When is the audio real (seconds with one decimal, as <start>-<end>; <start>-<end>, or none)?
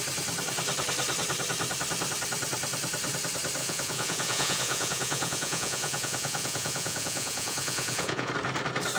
0.0-3.6; 8.3-9.0